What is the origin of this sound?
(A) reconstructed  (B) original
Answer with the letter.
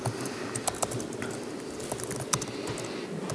B